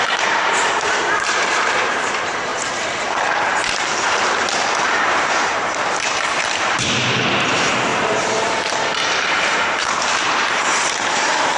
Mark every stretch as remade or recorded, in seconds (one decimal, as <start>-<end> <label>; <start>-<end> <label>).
0.0-2.5 remade; 2.5-4.9 recorded; 4.9-11.6 remade